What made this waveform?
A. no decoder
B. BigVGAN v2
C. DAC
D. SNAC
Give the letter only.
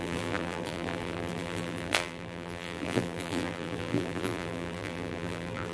B